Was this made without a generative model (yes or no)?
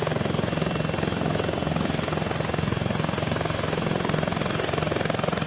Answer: yes